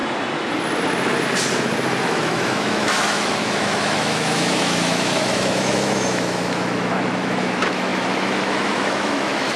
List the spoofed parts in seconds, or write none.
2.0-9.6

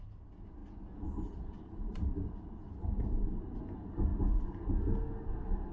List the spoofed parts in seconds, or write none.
0.6-3.6

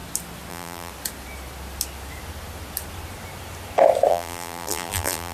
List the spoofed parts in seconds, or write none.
0.5-0.9; 4.1-5.3

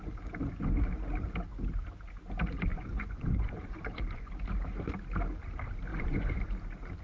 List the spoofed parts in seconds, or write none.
2.7-4.3; 5.9-6.4

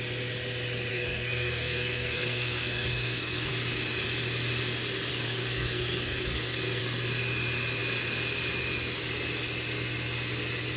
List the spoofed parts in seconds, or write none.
0.9-3.5; 5.1-6.8

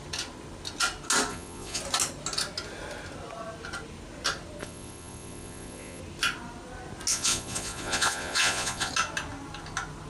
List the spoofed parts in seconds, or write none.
1.3-1.8; 4.6-6.0; 7.1-8.9

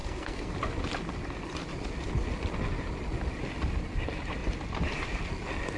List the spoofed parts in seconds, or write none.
0.0-0.5

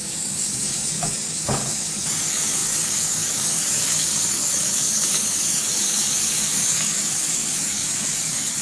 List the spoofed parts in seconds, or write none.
0.0-8.6